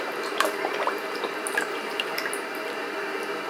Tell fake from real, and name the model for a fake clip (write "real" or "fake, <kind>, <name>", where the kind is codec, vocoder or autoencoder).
fake, vocoder, BigVGAN v2